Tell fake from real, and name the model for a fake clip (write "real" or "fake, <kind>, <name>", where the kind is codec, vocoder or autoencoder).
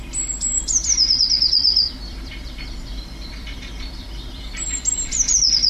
fake, vocoder, BigVGAN v2